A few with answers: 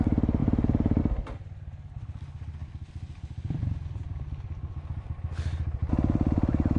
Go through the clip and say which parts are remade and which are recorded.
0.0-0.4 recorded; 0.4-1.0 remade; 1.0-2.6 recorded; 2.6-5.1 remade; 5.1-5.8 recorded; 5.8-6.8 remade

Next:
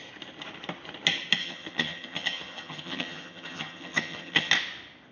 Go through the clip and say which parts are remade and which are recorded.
0.0-1.4 recorded; 1.4-4.5 remade; 4.5-5.1 recorded

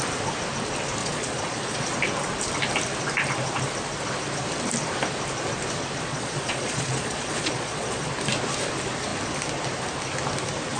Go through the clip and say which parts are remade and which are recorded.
0.0-1.0 recorded; 1.0-1.9 remade; 1.9-6.1 recorded; 6.1-8.1 remade; 8.1-10.8 recorded

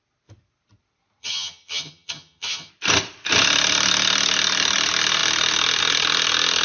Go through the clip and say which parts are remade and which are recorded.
0.0-1.2 recorded; 1.2-2.7 remade; 2.7-6.6 recorded

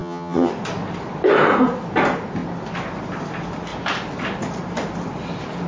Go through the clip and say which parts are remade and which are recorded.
0.0-0.5 remade; 0.5-5.7 recorded